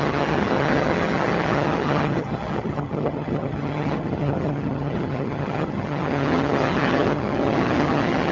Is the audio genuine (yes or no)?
no